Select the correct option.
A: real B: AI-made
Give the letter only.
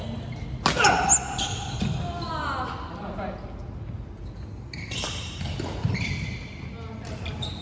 A